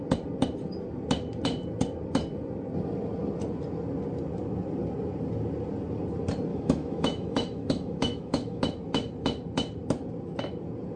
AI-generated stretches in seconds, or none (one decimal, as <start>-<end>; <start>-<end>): 6.5-8.6

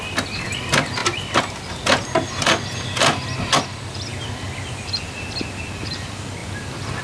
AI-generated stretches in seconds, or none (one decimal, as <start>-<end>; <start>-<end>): none

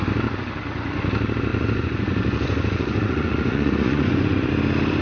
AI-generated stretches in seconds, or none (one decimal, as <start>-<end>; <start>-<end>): 1.5-4.5

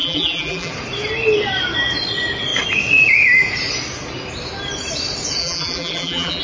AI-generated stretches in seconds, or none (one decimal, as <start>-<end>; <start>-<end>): 0.0-0.7; 5.4-6.4

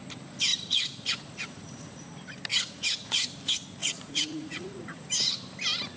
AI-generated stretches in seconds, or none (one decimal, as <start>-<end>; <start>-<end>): 0.5-2.1; 2.5-3.1; 3.8-5.1

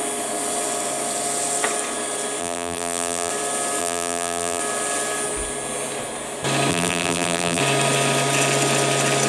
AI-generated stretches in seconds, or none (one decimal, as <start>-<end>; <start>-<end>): 2.4-3.3; 3.8-4.6; 6.7-7.6

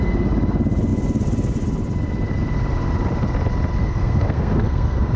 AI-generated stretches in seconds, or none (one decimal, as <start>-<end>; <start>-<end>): 3.8-5.2

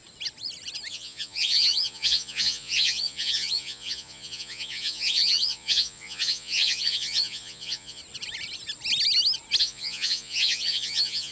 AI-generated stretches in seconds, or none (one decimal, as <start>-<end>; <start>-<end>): 0.9-8.0; 9.6-11.3